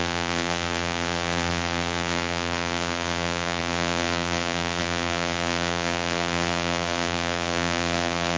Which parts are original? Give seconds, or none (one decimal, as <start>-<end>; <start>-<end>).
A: none